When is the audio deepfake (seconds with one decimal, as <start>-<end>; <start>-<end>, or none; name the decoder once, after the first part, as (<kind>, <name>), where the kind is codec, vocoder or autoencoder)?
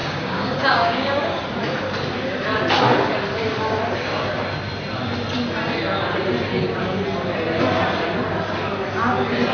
0.0-1.4 (codec, DAC)